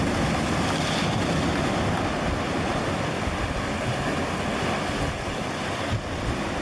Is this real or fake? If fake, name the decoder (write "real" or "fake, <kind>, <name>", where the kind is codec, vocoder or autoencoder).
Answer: real